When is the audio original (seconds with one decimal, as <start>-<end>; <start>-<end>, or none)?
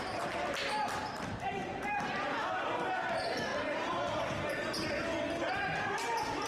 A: 0.0-1.6; 2.7-3.5; 4.5-6.5